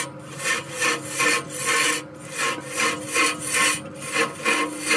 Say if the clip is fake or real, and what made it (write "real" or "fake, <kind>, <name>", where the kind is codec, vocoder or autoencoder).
real